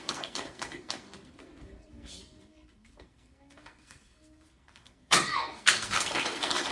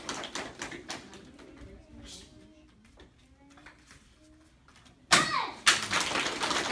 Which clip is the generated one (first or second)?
first